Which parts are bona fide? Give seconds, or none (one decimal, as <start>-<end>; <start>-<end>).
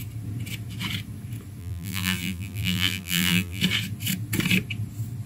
0.0-1.6; 3.6-5.3